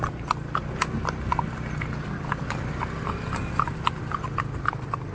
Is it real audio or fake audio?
real